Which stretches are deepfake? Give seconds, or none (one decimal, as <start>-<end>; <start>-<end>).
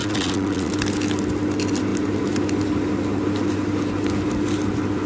0.0-0.7